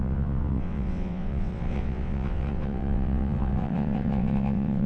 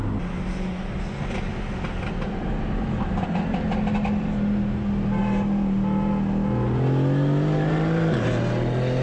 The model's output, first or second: first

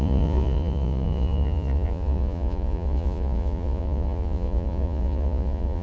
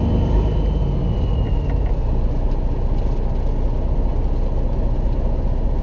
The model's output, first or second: first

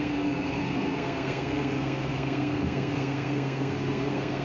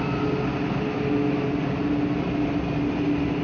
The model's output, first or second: first